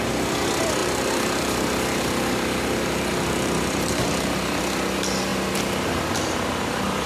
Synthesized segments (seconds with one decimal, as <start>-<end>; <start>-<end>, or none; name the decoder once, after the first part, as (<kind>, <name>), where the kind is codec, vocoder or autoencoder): 0.8-4.6 (vocoder, BigVGAN v2)